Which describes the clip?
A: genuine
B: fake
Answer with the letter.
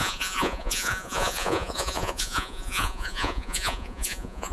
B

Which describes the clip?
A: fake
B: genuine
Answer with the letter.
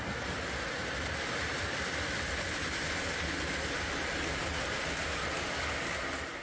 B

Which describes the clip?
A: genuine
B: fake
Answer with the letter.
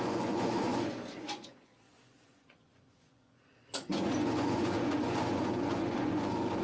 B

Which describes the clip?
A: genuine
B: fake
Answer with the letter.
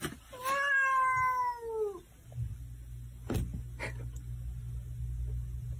A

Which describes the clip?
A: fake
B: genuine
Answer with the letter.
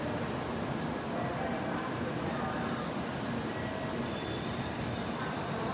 B